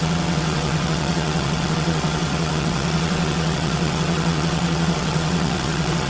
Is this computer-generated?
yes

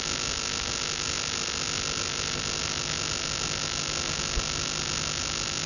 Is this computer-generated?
no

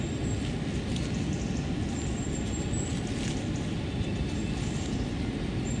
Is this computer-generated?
no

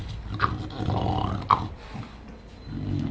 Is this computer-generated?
no